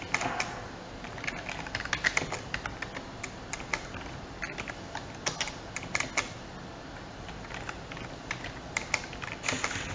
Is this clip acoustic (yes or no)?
yes